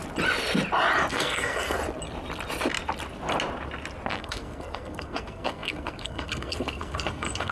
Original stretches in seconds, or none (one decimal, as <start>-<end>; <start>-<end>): 0.0-1.1; 1.8-4.1